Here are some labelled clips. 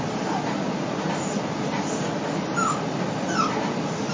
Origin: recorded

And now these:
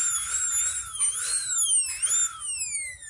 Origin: recorded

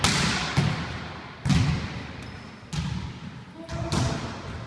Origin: recorded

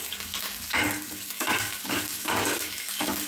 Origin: remade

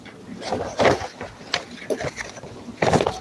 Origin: recorded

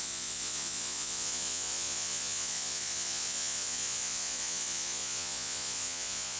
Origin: remade